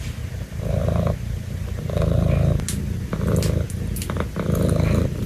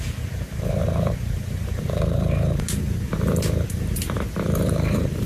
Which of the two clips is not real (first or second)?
second